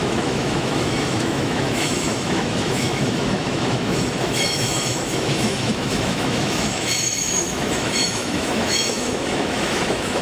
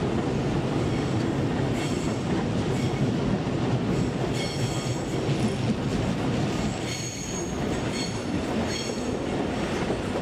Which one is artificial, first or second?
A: first